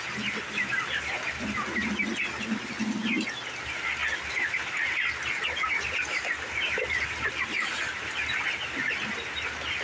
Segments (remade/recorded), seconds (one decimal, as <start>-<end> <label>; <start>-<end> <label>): 0.0-9.8 recorded